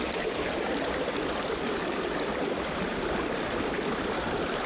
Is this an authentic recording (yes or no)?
yes